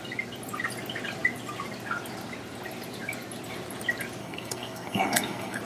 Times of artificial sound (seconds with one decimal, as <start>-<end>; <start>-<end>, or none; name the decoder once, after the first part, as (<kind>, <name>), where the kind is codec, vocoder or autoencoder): 4.2-5.6 (codec, SNAC)